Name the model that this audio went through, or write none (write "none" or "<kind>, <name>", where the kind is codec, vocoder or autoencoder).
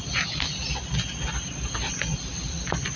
none